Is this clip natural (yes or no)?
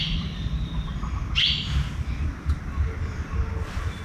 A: yes